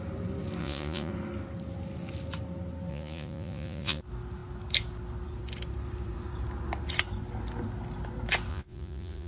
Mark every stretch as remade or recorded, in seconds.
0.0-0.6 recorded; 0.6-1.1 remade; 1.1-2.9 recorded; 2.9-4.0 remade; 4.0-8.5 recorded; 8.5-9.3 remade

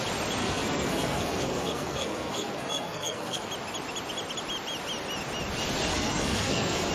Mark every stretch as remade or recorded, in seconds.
0.0-0.4 recorded; 0.4-3.5 remade; 3.5-5.9 recorded; 5.9-6.9 remade

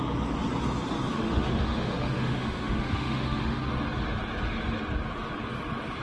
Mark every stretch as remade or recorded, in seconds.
0.0-1.1 recorded; 1.1-3.7 remade; 3.7-6.0 recorded

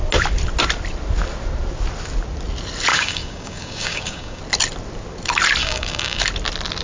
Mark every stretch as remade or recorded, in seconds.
0.0-2.9 recorded; 2.9-4.4 remade; 4.4-5.6 recorded; 5.6-6.2 remade; 6.2-6.8 recorded

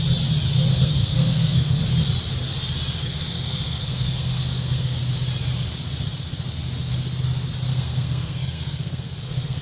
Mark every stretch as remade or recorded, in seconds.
0.0-0.7 recorded; 0.7-1.8 remade; 1.8-3.0 recorded; 3.0-5.0 remade; 5.0-7.7 recorded; 7.7-9.6 remade

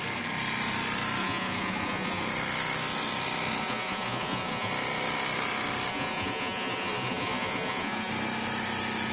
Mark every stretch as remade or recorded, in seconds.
0.0-1.2 recorded; 1.2-2.2 remade; 2.2-3.6 recorded; 3.6-4.7 remade; 4.7-5.9 recorded; 5.9-8.1 remade; 8.1-9.1 recorded

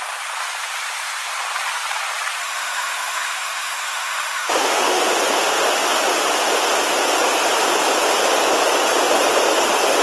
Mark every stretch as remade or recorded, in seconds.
0.0-2.4 recorded; 2.4-5.0 remade; 5.0-10.0 recorded

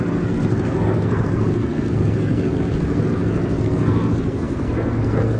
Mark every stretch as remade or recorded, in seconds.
0.0-5.4 remade